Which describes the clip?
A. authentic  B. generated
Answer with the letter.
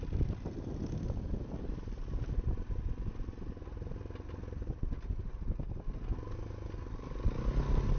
A